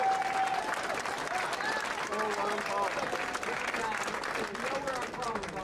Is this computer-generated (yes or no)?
no